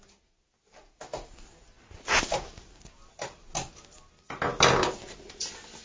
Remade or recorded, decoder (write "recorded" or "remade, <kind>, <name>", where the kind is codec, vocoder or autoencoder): recorded